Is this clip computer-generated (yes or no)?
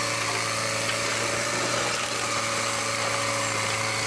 no